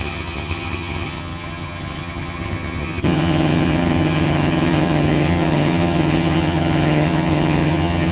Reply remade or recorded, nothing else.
remade